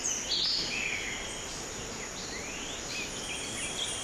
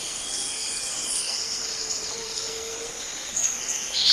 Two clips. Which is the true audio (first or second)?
first